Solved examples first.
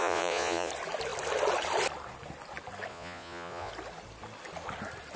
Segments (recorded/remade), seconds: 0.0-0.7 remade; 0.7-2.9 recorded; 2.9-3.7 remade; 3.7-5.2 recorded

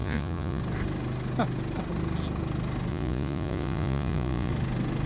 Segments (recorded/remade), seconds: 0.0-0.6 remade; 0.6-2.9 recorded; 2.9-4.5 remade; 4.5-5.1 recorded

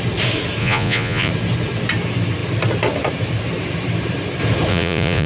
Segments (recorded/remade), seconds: 0.0-0.6 recorded; 0.6-1.3 remade; 1.3-4.7 recorded; 4.7-5.3 remade

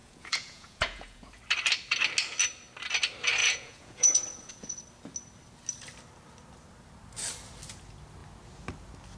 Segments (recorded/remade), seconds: 0.0-1.4 remade; 1.4-3.4 recorded; 3.4-4.8 remade; 4.8-9.2 recorded